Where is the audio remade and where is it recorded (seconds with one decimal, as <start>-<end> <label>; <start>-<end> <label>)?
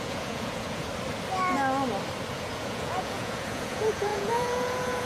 0.0-0.9 remade; 0.9-2.3 recorded; 2.3-5.0 remade